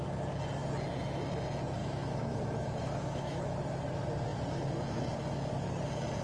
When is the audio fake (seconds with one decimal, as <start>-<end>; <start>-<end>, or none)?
1.8-3.6